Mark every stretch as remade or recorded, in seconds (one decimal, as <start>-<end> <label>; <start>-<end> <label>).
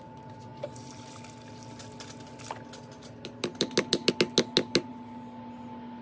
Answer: 0.0-6.0 recorded